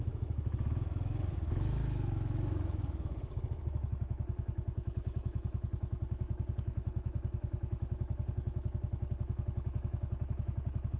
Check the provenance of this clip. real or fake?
fake